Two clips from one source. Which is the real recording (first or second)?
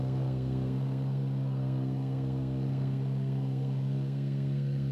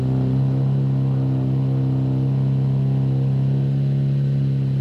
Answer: second